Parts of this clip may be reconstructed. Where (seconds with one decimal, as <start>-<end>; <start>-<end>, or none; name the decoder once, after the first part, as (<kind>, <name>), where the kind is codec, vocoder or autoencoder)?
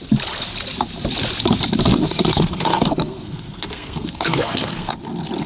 2.3-4.9 (codec, SNAC)